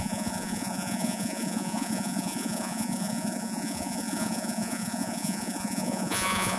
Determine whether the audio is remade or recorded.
remade